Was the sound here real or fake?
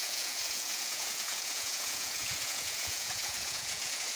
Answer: fake